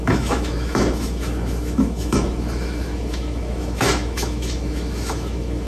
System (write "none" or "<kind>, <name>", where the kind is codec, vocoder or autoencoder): autoencoder, DAC-VAE